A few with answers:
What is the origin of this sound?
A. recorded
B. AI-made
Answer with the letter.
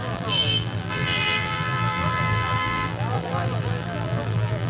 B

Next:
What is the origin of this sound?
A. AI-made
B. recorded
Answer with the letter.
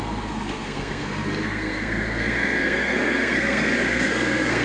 A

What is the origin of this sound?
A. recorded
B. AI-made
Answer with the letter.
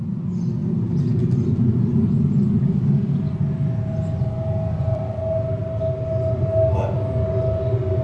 A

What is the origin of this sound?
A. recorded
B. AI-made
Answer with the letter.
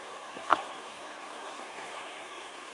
B